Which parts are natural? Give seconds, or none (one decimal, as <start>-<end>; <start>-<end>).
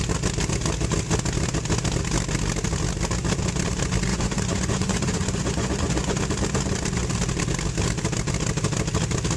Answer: 0.0-4.1; 6.2-9.4